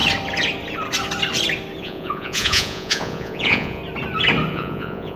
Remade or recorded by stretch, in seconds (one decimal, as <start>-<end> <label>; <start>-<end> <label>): 0.0-1.8 recorded; 1.8-3.8 remade; 3.8-4.5 recorded; 4.5-5.2 remade